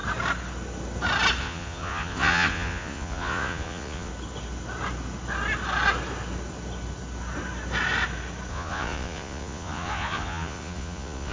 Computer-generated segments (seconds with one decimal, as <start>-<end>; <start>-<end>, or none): 1.4-4.1; 8.5-11.3